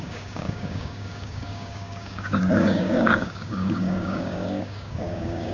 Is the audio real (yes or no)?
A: no